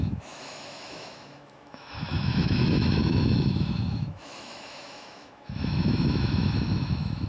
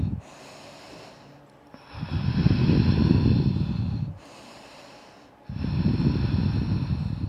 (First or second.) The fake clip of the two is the first